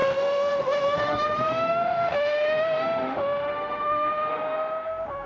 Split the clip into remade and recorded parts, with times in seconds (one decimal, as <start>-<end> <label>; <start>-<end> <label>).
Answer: 0.0-5.3 remade